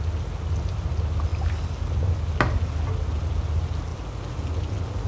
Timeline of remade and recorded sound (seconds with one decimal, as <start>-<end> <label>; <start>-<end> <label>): 0.0-5.1 recorded